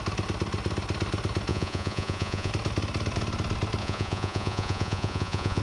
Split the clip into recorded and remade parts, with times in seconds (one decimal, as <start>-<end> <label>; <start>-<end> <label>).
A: 0.0-1.5 recorded; 1.5-2.5 remade; 2.5-3.8 recorded; 3.8-5.6 remade